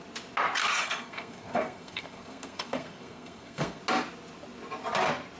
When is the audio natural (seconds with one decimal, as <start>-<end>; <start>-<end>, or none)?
0.0-0.6; 3.8-5.4